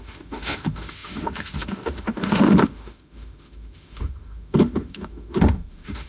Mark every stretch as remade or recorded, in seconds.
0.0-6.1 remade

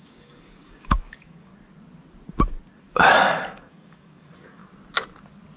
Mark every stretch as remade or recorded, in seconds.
0.0-1.5 remade; 1.5-2.8 recorded; 2.8-4.6 remade; 4.6-5.6 recorded